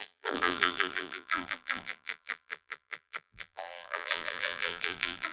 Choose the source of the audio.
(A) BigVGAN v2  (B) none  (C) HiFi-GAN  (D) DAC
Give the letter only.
A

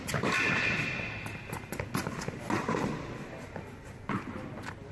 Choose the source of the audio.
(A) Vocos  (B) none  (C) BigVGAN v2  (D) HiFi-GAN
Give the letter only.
B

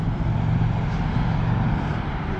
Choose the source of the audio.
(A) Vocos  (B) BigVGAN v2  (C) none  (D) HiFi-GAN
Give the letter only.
B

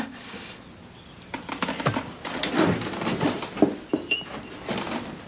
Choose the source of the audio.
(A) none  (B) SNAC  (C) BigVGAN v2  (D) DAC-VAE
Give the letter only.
A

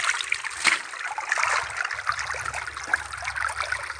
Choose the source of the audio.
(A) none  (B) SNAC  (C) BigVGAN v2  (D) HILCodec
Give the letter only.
A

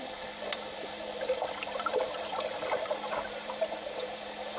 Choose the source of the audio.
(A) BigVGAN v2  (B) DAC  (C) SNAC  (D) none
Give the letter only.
A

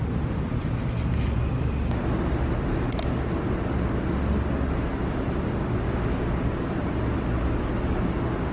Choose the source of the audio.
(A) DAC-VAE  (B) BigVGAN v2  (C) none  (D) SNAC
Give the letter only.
C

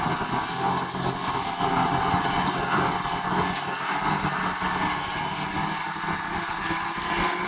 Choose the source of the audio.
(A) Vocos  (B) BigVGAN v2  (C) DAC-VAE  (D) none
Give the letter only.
D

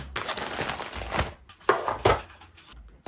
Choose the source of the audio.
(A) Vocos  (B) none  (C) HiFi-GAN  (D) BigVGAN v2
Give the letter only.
B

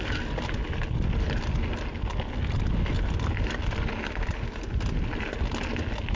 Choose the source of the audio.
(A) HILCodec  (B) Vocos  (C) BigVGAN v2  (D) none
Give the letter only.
D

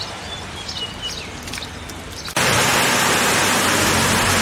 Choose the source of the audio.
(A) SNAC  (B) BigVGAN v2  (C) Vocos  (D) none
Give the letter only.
D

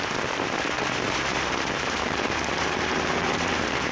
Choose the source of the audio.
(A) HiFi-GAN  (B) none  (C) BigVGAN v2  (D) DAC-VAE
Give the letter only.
C